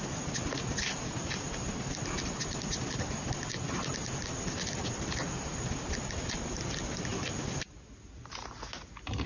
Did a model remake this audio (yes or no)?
no